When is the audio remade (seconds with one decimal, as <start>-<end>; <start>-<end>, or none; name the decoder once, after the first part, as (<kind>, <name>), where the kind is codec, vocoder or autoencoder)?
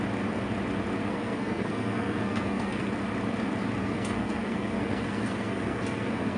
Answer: 1.0-2.9 (codec, SNAC); 3.8-6.4